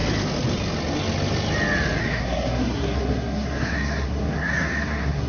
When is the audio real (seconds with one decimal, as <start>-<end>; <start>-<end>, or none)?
0.0-2.0